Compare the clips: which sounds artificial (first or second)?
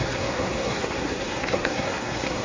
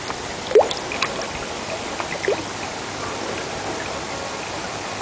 first